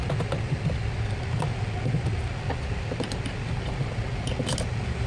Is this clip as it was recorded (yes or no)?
yes